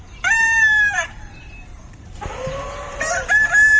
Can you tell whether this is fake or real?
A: fake